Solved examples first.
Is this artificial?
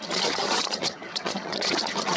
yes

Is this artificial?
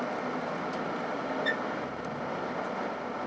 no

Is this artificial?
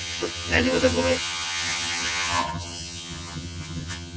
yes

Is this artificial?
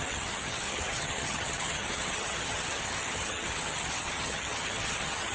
yes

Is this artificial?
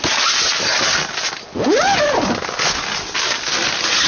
no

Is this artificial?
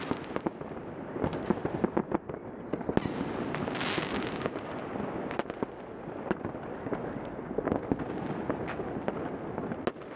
no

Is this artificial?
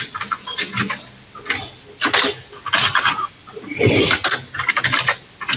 no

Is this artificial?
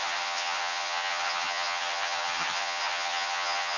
yes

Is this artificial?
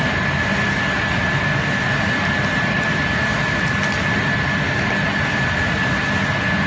no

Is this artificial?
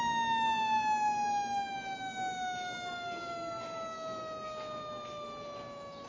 no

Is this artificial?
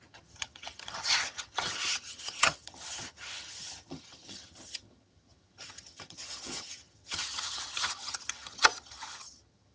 yes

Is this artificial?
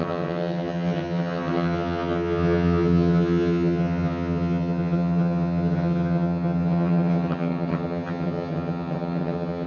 yes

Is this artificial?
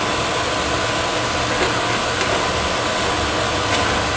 no